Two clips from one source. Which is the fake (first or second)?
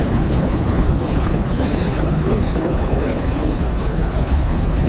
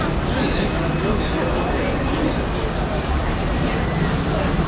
first